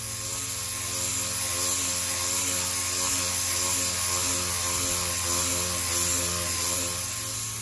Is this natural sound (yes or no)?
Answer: yes